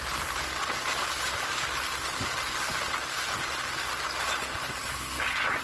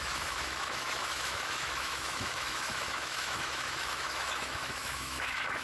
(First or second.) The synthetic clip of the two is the second